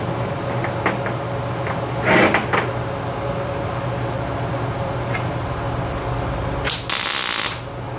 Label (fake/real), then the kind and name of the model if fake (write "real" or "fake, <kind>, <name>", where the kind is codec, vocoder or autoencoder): real